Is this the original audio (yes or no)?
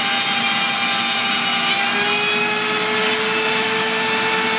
yes